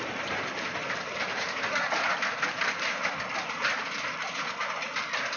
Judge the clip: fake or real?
real